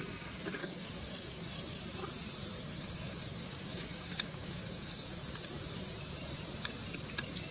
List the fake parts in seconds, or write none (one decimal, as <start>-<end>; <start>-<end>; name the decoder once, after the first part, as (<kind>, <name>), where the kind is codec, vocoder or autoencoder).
0.6-1.8 (codec, DAC); 2.7-5.1